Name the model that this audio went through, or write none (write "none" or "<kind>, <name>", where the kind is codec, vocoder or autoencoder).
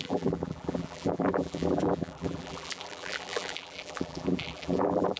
vocoder, BigVGAN v2